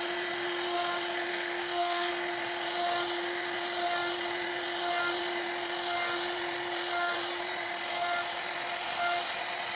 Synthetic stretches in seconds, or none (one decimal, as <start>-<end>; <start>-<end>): 1.3-2.1